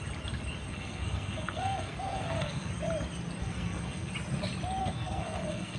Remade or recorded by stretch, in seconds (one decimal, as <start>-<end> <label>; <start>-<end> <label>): 0.0-0.7 recorded; 0.7-2.7 remade; 2.7-3.4 recorded; 3.4-4.1 remade; 4.1-4.8 recorded; 4.8-5.8 remade